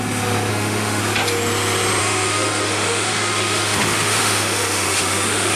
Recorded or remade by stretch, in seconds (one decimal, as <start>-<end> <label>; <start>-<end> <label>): 0.0-0.5 recorded; 0.5-1.0 remade; 1.0-2.0 recorded; 2.0-5.6 remade